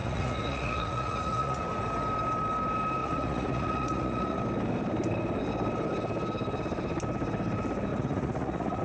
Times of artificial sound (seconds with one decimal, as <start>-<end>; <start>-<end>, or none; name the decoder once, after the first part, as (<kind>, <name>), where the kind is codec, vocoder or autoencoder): 0.0-1.6 (vocoder, Vocos); 3.0-4.4; 7.9-8.8